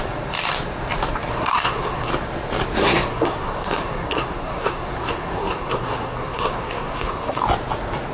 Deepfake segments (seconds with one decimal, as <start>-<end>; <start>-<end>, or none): 1.3-2.1; 2.8-7.4